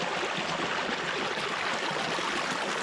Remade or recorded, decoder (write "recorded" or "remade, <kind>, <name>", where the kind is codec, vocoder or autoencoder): recorded